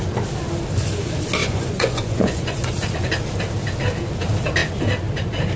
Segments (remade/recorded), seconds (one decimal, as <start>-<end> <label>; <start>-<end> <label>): 0.0-1.4 recorded; 1.4-2.7 remade; 2.7-5.6 recorded